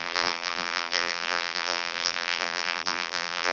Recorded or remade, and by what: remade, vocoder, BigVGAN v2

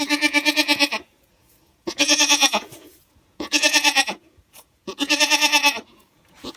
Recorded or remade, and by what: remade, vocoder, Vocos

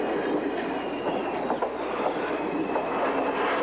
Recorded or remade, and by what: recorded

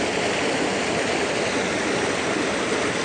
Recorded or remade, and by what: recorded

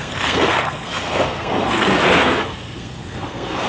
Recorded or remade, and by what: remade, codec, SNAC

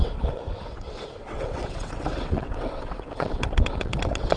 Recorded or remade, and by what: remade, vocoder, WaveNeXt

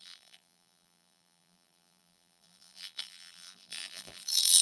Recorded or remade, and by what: remade, vocoder, BigVGAN v2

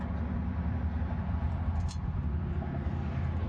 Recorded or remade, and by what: recorded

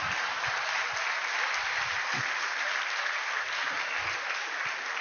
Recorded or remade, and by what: recorded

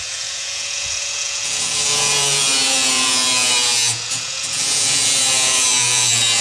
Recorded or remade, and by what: remade, vocoder, Vocos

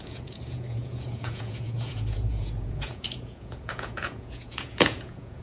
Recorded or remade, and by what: remade, vocoder, Vocos